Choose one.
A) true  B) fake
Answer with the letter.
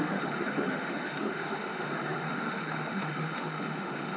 B